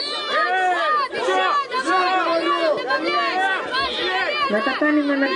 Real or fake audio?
real